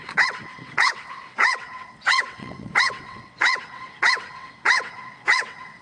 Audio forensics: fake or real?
fake